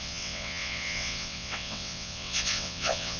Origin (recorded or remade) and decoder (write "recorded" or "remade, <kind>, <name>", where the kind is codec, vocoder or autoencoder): remade, vocoder, WaveNeXt